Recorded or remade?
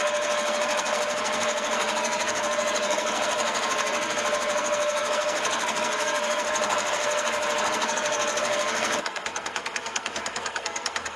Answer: remade